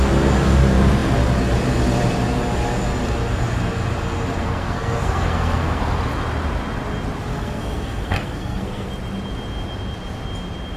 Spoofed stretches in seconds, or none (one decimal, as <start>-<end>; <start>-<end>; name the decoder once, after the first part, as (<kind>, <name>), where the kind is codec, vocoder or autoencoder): 4.4-5.8 (codec, SNAC); 7.3-8.9